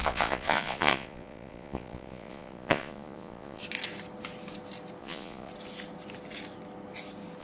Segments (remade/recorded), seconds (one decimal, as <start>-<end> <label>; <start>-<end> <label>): 0.0-3.6 remade; 3.6-5.0 recorded; 5.0-5.5 remade; 5.5-7.4 recorded